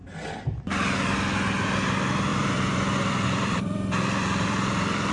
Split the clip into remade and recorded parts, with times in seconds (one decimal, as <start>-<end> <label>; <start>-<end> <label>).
0.0-2.3 recorded; 2.3-5.1 remade